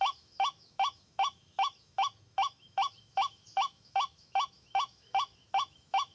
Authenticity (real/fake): fake